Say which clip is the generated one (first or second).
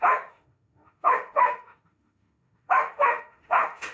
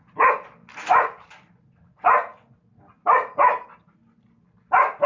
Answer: first